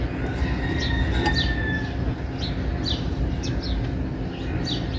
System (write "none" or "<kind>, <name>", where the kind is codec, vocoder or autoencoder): none